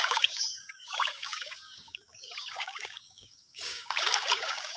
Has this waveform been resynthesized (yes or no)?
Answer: yes